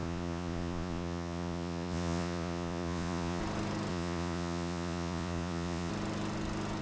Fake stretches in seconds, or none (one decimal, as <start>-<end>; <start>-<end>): 0.0-3.4; 3.9-5.9